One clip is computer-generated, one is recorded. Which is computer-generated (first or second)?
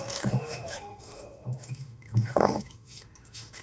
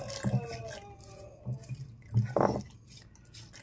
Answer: first